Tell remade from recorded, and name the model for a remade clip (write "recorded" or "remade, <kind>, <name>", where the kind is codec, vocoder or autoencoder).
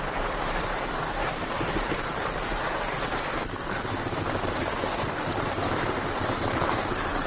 remade, vocoder, BigVGAN v2